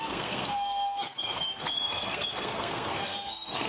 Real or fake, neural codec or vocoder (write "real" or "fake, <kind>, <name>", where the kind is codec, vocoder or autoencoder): fake, codec, SNAC